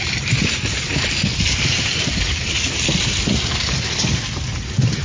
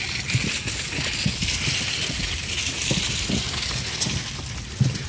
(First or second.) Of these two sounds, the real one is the second